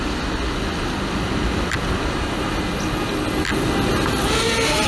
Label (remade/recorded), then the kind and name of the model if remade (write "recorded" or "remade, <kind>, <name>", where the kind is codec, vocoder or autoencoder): recorded